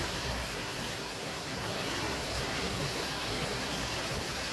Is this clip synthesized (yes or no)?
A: yes